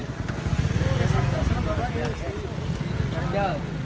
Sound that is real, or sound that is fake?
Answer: real